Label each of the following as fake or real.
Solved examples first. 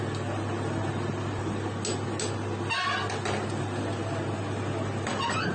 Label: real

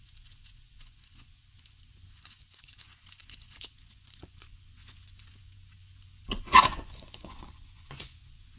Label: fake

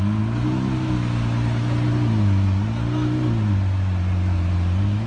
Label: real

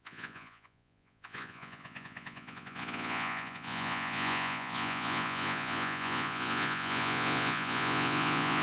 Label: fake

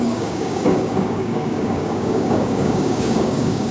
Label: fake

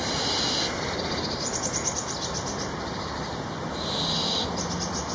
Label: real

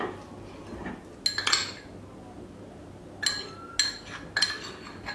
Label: real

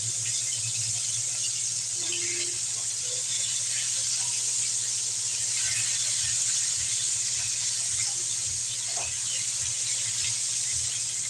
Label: real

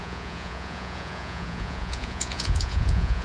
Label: fake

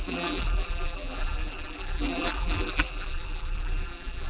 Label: fake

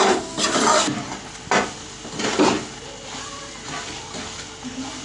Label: real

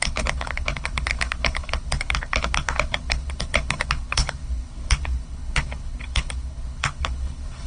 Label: fake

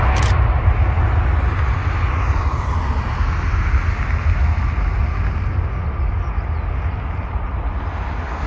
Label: real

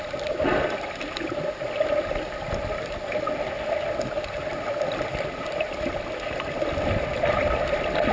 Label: real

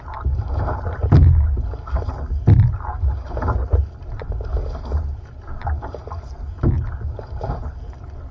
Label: real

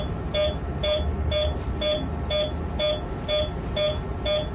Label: real